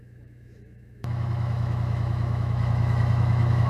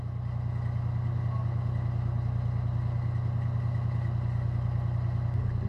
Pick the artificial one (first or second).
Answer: first